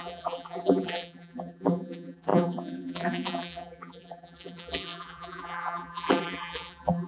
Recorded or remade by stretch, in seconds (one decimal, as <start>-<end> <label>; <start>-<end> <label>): 0.0-7.1 remade